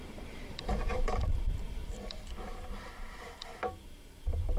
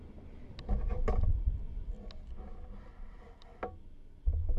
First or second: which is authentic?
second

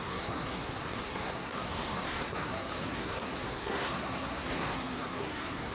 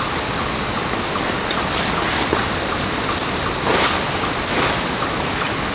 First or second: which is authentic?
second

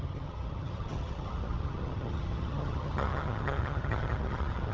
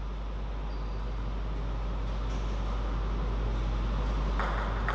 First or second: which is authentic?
second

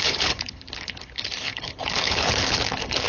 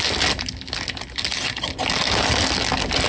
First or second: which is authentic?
second